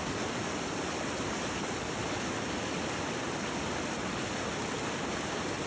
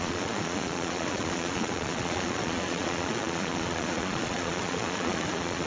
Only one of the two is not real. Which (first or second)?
second